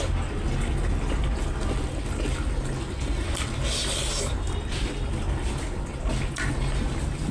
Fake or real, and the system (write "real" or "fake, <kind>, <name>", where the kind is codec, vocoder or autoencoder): real